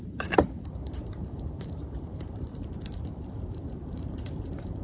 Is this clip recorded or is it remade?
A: remade